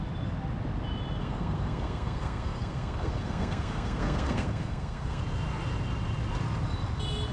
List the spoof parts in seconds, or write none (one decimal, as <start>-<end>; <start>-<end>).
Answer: 1.2-5.2